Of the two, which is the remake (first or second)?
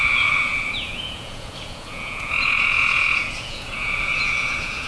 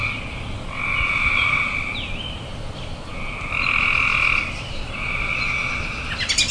first